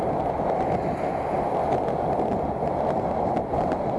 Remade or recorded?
recorded